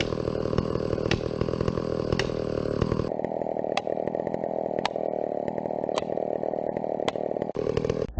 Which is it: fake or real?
real